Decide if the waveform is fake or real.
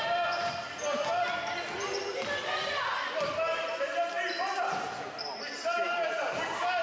real